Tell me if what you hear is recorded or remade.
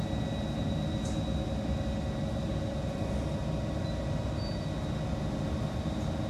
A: recorded